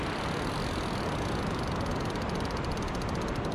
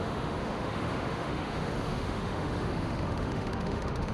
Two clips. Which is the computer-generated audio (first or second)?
second